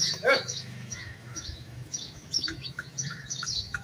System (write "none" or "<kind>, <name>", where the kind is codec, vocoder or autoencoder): autoencoder, DAC-VAE